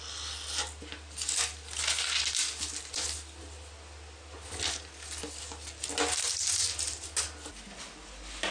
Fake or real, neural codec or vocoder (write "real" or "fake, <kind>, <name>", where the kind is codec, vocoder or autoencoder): real